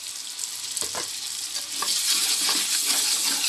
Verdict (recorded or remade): recorded